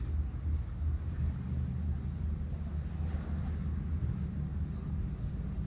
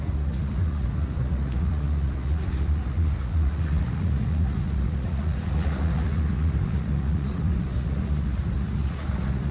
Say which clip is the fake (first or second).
second